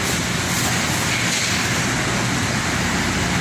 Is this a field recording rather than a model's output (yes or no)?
yes